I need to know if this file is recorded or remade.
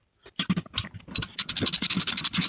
recorded